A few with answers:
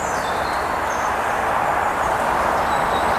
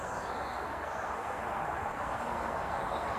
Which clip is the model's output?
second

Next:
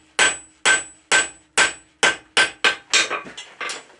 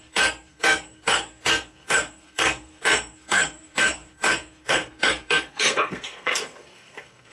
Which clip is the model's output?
second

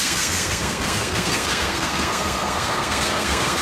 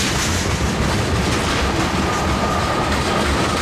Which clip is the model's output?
first